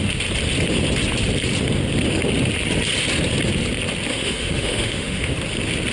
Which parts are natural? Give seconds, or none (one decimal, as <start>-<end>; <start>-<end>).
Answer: 0.0-4.1; 5.3-5.9